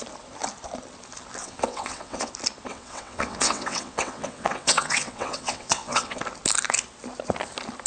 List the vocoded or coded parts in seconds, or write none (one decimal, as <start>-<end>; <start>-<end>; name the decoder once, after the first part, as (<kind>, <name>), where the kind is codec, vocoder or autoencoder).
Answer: 1.4-2.3 (vocoder, WaveNeXt); 2.7-6.2